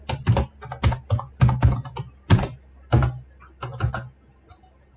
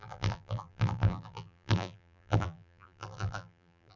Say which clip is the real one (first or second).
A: first